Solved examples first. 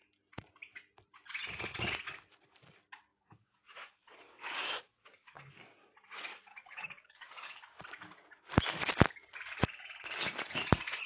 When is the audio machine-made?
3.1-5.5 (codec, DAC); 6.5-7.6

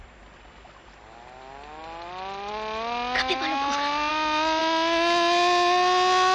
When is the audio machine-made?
none

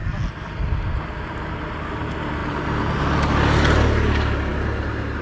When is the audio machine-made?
none

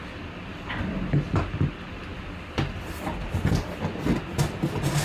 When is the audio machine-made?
none